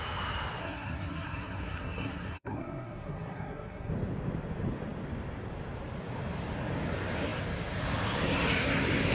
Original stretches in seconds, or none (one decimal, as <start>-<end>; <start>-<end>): 0.0-0.6; 3.9-9.1